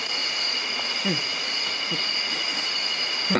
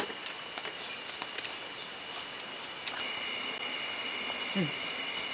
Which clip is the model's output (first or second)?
first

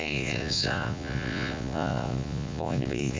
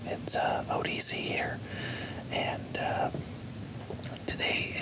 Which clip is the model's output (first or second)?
first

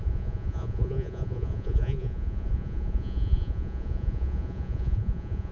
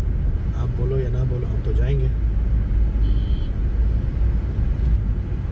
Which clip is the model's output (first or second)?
first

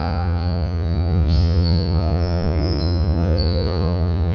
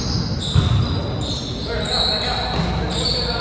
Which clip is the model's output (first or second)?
first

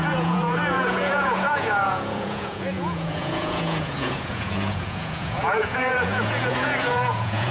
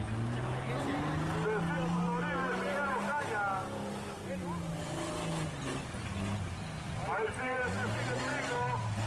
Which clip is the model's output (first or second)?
first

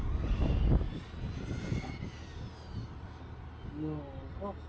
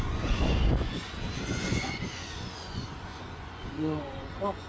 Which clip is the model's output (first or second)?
second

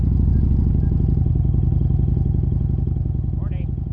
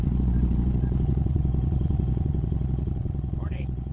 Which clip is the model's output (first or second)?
second